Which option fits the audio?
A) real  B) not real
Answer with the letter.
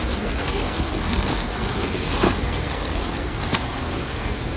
B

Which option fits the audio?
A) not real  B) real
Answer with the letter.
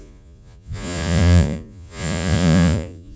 A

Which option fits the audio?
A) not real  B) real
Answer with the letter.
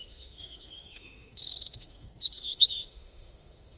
A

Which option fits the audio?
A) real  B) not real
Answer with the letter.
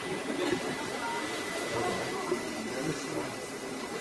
B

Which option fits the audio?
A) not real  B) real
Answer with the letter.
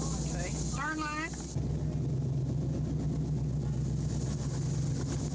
B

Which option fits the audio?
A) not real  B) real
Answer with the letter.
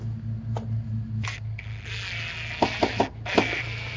B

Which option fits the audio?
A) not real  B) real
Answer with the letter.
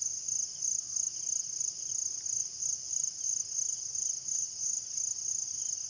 B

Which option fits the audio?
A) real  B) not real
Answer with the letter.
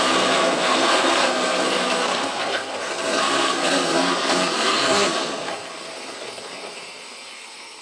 B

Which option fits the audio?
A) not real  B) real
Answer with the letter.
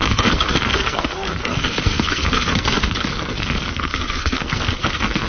A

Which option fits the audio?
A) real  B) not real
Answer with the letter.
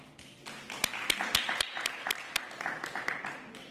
A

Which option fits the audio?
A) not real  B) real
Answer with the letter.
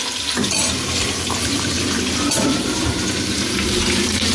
A